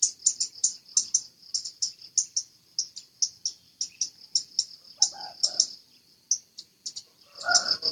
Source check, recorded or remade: recorded